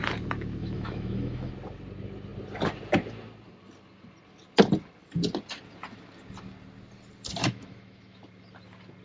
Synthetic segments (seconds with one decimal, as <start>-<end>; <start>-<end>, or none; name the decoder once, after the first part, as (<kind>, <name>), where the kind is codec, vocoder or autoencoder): 0.6-1.5 (autoencoder, DAC-VAE); 7.4-8.2